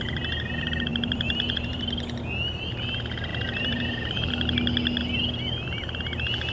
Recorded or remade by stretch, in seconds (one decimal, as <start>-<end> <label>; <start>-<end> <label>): 0.0-0.9 recorded; 0.9-1.8 remade; 1.8-3.3 recorded; 3.3-4.3 remade; 4.3-6.5 recorded